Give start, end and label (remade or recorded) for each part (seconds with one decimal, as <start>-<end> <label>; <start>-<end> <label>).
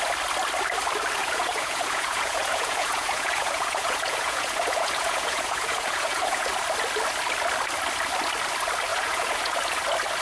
0.0-1.2 recorded; 1.2-6.5 remade; 6.5-8.9 recorded; 8.9-9.6 remade; 9.6-10.2 recorded